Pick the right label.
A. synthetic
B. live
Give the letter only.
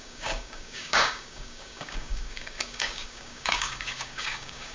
A